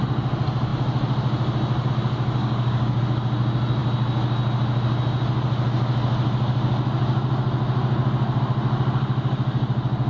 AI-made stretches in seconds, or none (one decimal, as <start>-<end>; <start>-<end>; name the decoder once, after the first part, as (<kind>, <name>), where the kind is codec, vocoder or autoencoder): 2.4-3.0 (codec, DAC)